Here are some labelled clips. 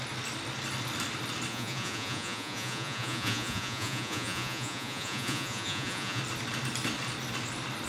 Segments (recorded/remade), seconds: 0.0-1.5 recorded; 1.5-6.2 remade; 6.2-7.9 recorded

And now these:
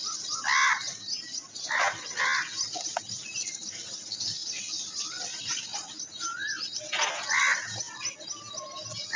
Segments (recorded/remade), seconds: 0.0-4.4 recorded; 4.4-6.1 remade; 6.1-9.2 recorded

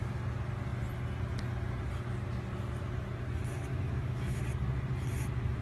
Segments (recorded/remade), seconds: 0.0-3.7 recorded; 3.7-4.4 remade; 4.4-5.6 recorded

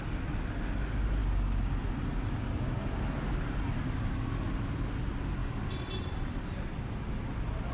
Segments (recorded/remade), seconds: 0.0-7.7 recorded

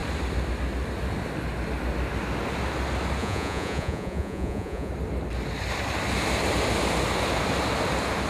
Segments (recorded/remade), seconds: 0.0-3.2 recorded; 3.2-4.9 remade; 4.9-8.3 recorded

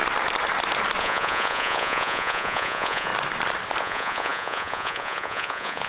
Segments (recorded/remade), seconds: 0.0-1.0 recorded; 1.0-3.1 remade; 3.1-3.8 recorded; 3.8-5.9 remade

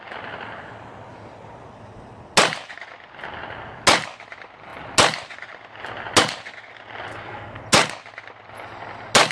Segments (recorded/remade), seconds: 0.0-7.1 recorded; 7.1-7.6 remade; 7.6-9.3 recorded